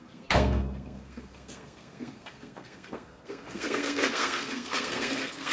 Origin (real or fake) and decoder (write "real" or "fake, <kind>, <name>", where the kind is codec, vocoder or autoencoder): fake, codec, SNAC